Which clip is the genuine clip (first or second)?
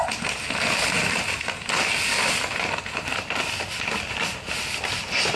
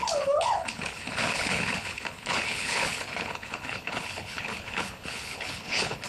first